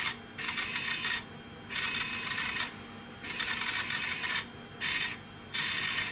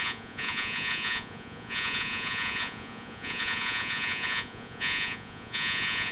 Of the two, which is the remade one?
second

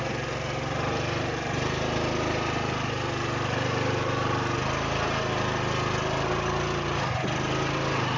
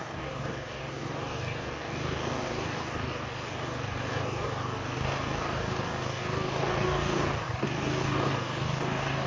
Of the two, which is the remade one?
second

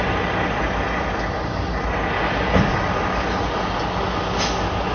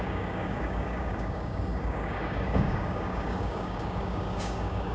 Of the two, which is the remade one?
second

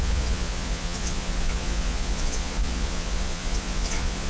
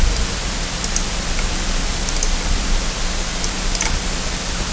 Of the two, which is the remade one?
first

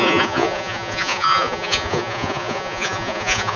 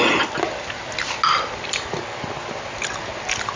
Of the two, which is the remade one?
first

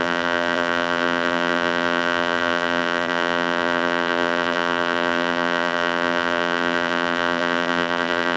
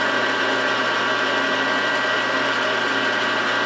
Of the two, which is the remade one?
first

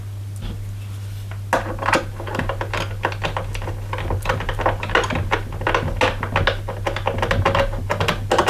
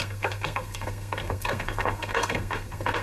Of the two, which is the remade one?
second